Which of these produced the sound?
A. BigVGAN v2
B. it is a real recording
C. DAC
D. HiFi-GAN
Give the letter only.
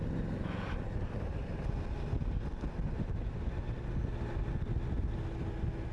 B